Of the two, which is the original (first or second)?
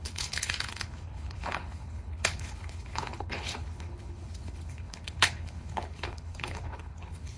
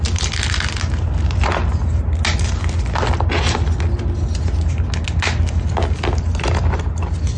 second